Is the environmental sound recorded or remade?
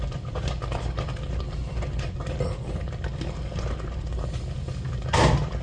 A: recorded